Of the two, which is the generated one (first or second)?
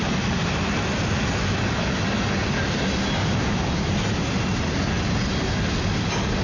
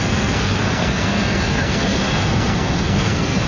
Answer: second